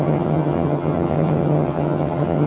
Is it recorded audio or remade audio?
remade